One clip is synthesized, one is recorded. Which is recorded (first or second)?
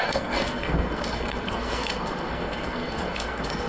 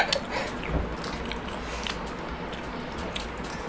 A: second